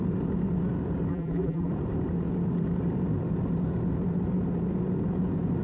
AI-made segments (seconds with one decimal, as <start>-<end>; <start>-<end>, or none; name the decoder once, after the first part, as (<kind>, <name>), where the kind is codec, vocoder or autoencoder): 1.1-1.7 (vocoder, BigVGAN v2)